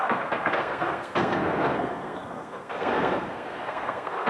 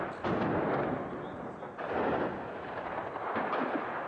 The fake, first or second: first